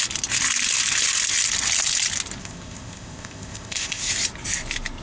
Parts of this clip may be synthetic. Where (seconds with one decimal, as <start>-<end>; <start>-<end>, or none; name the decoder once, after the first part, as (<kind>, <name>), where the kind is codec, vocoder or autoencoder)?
2.4-4.1 (codec, ZipCodec)